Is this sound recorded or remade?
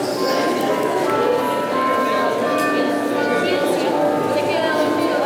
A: recorded